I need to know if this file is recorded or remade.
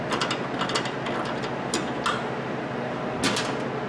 recorded